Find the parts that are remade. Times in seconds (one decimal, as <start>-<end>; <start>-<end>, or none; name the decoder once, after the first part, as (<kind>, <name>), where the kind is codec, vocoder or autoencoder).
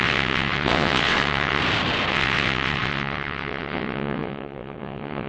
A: 0.0-1.6 (vocoder, WaveNeXt); 2.1-5.3